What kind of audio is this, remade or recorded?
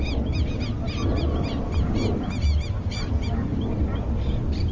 recorded